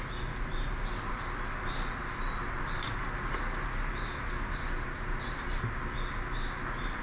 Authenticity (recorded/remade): recorded